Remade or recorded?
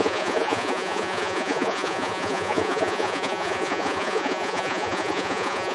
remade